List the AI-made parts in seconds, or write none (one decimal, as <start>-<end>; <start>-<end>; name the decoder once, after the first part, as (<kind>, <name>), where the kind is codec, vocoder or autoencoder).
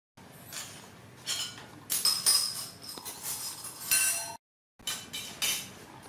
none